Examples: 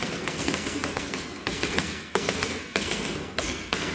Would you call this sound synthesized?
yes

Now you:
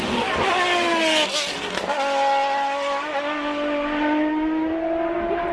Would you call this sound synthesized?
no